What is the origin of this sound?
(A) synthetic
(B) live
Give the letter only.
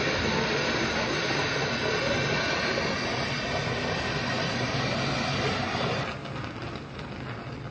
B